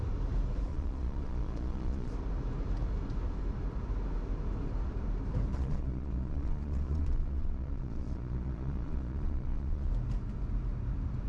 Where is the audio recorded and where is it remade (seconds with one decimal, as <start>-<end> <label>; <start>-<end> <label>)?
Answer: 0.0-0.7 recorded; 0.7-2.1 remade; 2.1-5.5 recorded; 5.5-9.9 remade; 9.9-11.3 recorded

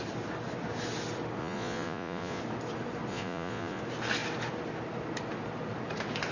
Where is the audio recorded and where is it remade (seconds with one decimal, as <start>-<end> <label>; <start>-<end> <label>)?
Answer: 0.0-1.4 recorded; 1.4-2.4 remade; 2.4-3.1 recorded; 3.1-3.8 remade; 3.8-6.3 recorded

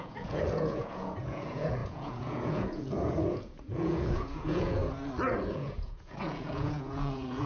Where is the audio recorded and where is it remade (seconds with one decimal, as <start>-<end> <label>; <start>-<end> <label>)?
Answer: 0.0-4.8 remade; 4.8-5.5 recorded; 5.5-7.5 remade

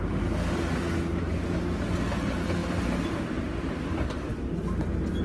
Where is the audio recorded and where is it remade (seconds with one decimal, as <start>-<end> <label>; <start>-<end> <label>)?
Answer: 0.0-2.6 recorded; 2.6-4.3 remade; 4.3-5.2 recorded

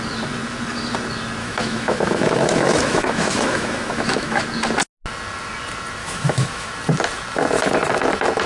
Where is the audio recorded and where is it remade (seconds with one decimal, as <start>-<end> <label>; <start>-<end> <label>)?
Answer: 0.0-1.4 recorded; 1.4-4.4 remade; 4.4-6.0 recorded; 6.0-6.7 remade; 6.7-8.5 recorded

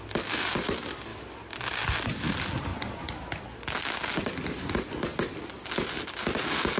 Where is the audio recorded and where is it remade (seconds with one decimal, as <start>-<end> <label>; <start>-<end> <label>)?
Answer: 0.0-2.7 recorded; 2.7-3.4 remade; 3.4-5.1 recorded; 5.1-5.7 remade; 5.7-6.8 recorded